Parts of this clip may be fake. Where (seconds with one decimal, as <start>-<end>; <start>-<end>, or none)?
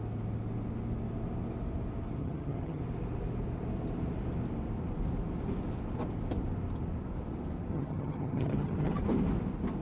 2.2-2.8; 7.7-9.0